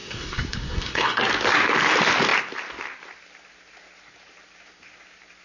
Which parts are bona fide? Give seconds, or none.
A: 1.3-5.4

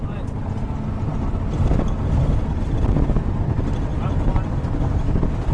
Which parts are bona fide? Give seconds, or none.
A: 0.0-5.5

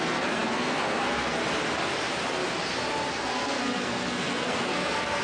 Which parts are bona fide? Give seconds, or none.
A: 1.4-3.1

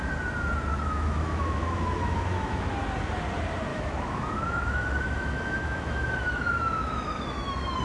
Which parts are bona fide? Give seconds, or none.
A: 0.0-0.7; 2.7-3.7

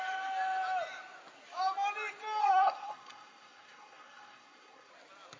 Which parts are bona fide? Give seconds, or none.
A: 0.0-2.4; 4.9-5.4

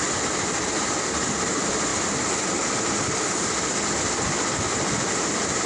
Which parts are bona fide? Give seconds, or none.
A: 0.0-5.7

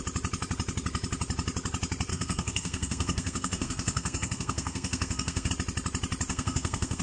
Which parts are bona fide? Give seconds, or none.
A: 0.0-2.1; 5.5-6.3